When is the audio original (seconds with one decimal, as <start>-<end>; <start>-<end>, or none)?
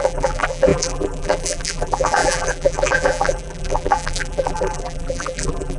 none